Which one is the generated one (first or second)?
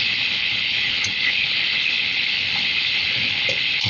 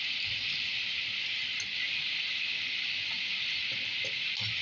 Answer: first